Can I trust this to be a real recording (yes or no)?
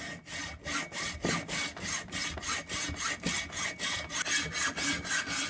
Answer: yes